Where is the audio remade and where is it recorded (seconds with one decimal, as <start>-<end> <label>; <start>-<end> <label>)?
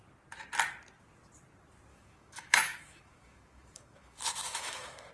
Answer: 0.0-1.9 recorded; 1.9-5.1 remade